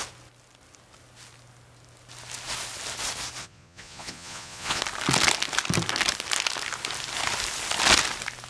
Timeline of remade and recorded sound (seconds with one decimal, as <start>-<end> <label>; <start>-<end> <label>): 0.0-3.4 recorded; 3.4-4.8 remade; 4.8-8.5 recorded